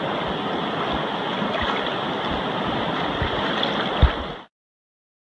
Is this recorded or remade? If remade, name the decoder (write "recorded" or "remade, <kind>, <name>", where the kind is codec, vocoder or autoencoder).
recorded